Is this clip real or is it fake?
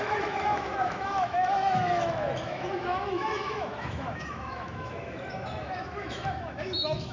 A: fake